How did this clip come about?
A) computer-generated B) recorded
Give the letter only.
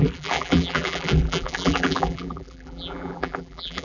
A